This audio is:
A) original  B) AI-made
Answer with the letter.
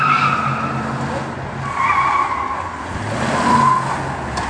A